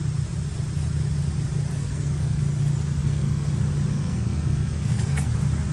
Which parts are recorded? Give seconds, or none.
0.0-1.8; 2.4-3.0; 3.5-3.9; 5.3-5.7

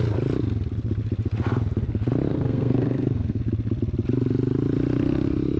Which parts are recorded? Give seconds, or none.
0.0-2.3; 3.4-5.6

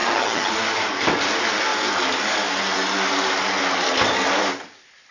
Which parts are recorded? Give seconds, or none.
0.5-5.1

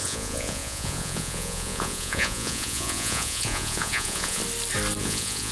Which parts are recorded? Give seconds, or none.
4.4-5.0

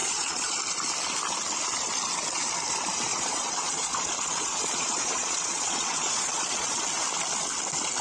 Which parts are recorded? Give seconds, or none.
0.6-3.1; 6.8-8.0

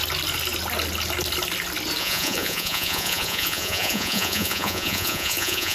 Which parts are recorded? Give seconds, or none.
0.0-2.0

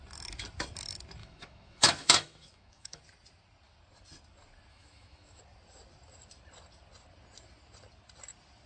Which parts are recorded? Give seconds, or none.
0.0-1.2; 3.0-4.7; 5.4-8.7